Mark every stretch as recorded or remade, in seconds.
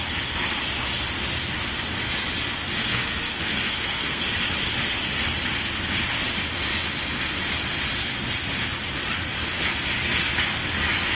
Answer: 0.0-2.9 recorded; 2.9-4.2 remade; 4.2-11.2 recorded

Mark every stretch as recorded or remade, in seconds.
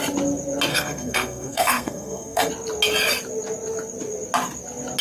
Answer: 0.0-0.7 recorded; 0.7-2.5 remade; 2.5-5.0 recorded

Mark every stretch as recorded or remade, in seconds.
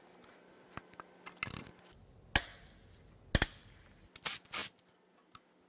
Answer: 0.0-5.7 recorded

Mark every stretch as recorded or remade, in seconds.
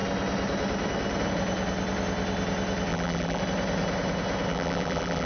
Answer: 0.0-2.9 recorded; 2.9-3.4 remade; 3.4-4.5 recorded; 4.5-5.3 remade